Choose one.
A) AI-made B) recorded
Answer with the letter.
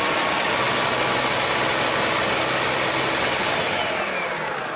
B